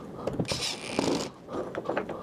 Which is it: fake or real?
real